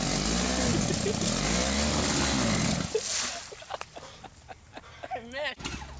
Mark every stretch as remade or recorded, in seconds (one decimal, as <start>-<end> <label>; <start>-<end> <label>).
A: 0.0-6.0 recorded